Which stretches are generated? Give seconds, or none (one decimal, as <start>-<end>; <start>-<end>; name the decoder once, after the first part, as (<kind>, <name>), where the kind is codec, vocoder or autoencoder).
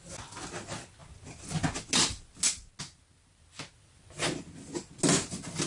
none